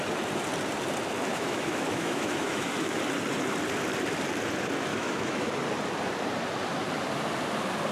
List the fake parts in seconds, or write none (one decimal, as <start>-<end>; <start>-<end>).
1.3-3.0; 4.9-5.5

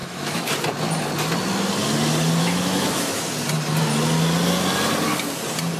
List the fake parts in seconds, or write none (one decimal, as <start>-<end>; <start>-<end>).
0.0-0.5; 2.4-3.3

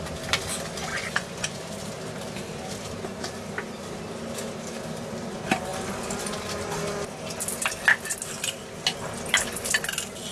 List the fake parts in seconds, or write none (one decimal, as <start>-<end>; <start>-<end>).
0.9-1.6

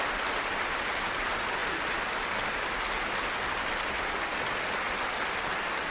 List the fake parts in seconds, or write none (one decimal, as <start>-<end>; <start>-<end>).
none

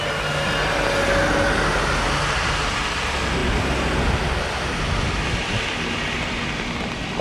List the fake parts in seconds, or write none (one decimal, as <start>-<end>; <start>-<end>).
none

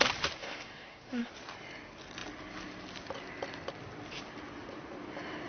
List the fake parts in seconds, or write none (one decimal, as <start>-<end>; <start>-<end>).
0.4-1.3

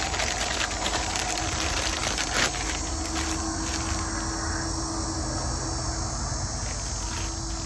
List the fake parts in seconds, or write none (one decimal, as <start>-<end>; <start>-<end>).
none

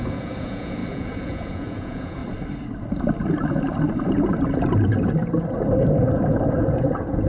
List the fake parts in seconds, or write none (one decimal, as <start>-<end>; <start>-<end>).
0.0-2.2; 6.6-7.3